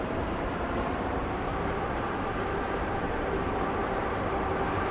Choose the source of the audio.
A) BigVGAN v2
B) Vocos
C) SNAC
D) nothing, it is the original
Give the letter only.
A